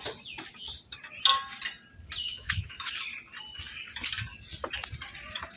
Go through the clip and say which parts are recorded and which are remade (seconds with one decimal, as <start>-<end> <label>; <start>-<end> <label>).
0.0-2.2 recorded; 2.2-2.9 remade; 2.9-5.6 recorded